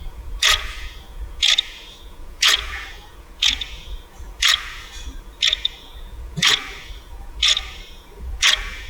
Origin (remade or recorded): remade